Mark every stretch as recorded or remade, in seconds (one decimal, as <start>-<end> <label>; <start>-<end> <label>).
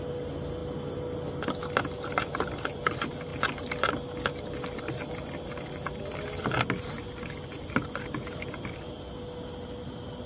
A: 0.0-10.3 recorded